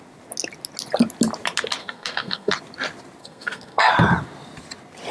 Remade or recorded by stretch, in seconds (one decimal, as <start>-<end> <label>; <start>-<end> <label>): 0.0-1.8 recorded; 1.8-2.5 remade; 2.5-3.2 recorded; 3.2-3.9 remade; 3.9-5.1 recorded